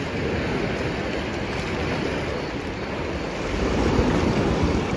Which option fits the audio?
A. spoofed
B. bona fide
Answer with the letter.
B